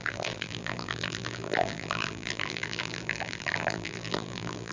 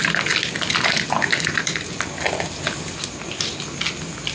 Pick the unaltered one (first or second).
second